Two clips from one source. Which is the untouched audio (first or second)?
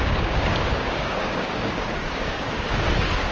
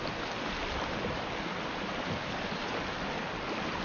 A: second